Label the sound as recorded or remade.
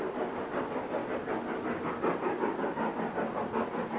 recorded